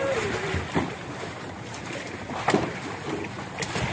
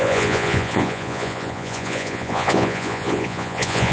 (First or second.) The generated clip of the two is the second